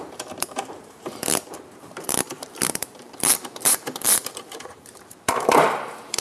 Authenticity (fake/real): fake